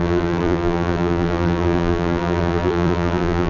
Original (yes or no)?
no